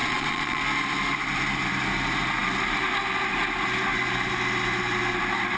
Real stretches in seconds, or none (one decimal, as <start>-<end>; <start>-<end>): 0.6-5.6